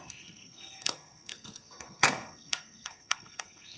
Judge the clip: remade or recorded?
remade